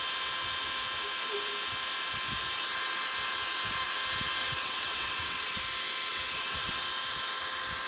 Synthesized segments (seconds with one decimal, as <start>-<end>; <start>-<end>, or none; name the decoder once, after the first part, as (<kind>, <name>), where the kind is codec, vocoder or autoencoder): 4.4-5.6 (vocoder, WaveNeXt); 6.1-6.8